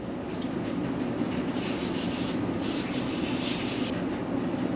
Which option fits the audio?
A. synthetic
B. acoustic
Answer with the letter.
B